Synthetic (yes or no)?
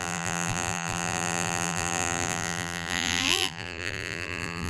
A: yes